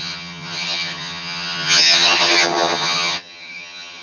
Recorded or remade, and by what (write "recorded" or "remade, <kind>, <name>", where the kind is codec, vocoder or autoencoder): remade, vocoder, HiFi-GAN